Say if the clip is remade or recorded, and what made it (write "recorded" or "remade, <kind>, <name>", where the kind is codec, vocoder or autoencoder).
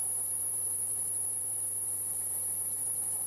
recorded